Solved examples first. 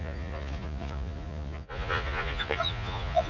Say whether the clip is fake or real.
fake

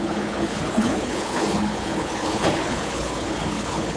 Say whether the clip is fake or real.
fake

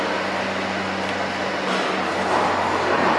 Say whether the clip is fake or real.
real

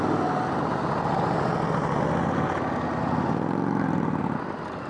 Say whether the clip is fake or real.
real